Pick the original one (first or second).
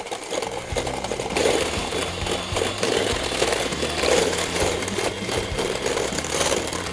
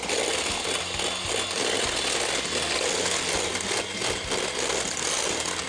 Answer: second